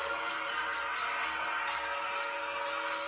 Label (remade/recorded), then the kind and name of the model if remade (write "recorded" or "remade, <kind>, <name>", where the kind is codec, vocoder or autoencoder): remade, codec, SNAC